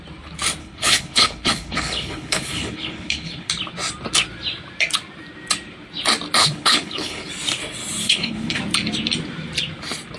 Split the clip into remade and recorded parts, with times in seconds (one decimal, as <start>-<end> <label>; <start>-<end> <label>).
0.0-0.6 recorded; 0.6-3.5 remade; 3.5-6.4 recorded; 6.4-7.3 remade; 7.3-8.0 recorded; 8.0-8.6 remade; 8.6-10.2 recorded